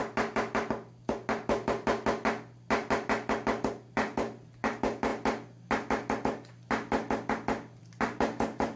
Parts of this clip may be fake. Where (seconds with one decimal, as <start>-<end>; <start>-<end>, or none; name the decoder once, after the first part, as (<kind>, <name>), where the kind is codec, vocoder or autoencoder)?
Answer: 3.7-5.1 (vocoder, BigVGAN v2); 7.8-8.8